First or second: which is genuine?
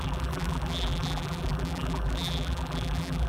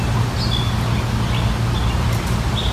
second